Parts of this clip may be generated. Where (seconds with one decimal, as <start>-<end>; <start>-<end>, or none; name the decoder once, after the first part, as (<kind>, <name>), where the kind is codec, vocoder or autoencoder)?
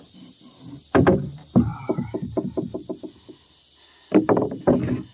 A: none